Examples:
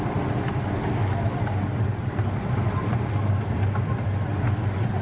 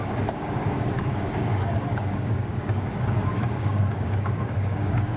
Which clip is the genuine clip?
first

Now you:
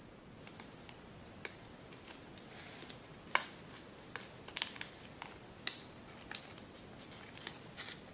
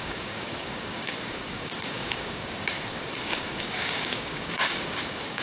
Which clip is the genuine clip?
first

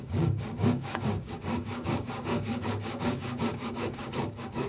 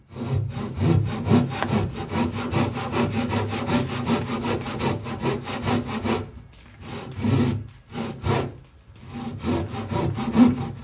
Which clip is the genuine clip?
second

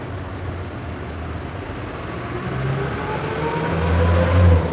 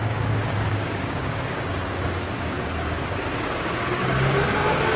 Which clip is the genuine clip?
first